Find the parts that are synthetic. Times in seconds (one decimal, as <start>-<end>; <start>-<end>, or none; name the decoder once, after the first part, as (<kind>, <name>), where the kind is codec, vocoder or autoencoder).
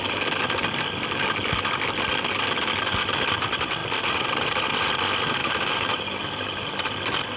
5.4-6.7 (vocoder, BigVGAN v2)